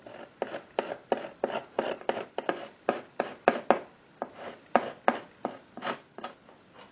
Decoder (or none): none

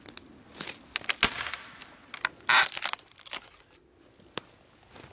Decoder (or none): none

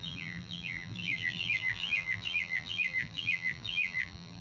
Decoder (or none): vocoder, BigVGAN v2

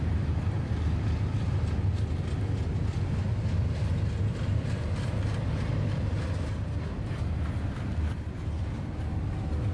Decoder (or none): none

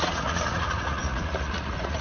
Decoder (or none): vocoder, Vocos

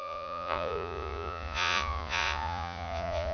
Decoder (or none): vocoder, Vocos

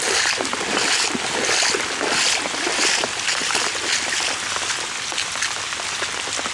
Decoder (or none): none